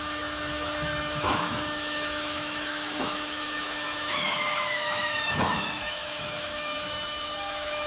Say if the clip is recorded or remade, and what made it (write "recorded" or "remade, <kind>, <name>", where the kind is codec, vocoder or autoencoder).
remade, autoencoder, DAC-VAE